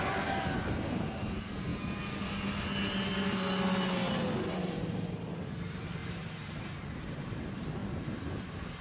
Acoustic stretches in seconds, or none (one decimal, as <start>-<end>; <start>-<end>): 1.7-4.5